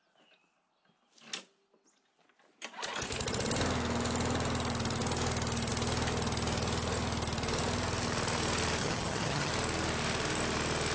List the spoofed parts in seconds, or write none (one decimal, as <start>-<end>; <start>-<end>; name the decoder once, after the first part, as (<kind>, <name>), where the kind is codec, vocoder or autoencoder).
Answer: 8.8-9.5 (vocoder, HiFi-GAN)